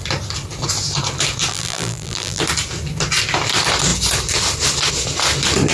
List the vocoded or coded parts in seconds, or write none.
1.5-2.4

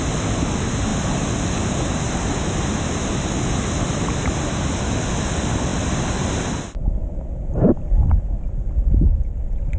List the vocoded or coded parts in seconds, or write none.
none

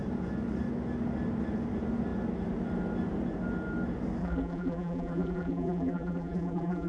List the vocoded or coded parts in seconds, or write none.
4.2-6.9

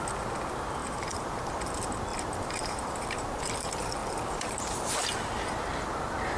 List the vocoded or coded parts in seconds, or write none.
0.8-1.5; 2.1-3.4; 4.0-4.8

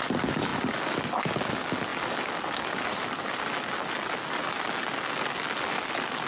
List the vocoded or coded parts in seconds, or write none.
none

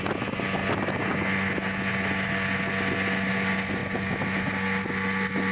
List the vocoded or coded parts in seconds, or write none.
none

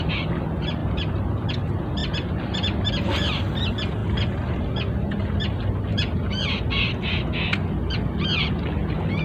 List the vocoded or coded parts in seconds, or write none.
0.8-1.5

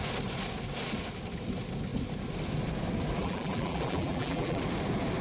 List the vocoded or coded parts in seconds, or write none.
3.2-4.6